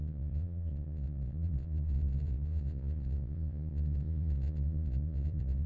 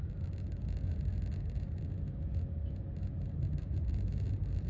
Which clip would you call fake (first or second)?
first